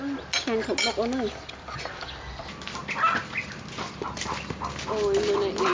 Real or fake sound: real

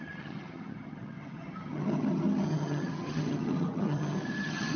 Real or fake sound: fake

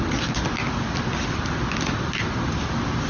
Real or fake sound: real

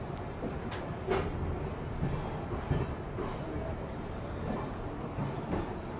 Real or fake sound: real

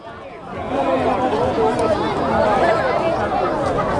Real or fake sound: real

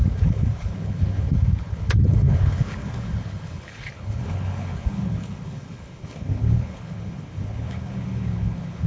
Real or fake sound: fake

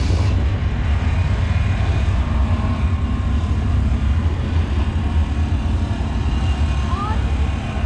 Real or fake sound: real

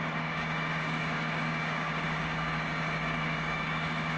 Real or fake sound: fake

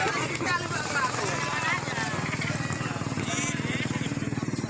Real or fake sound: real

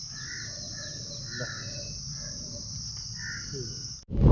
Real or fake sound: real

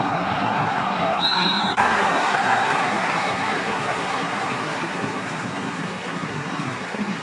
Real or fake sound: fake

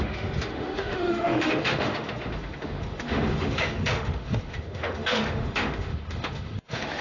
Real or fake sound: fake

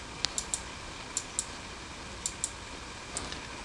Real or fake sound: real